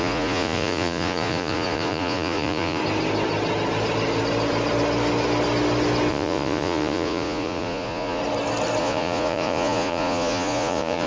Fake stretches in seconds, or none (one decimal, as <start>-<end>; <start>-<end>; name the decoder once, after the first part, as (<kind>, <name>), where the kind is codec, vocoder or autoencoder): 0.0-2.8 (vocoder, Vocos); 6.1-8.2; 8.8-11.1